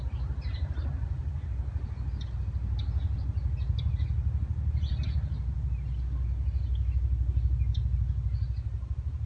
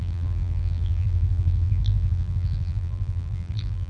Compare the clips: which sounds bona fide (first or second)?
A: first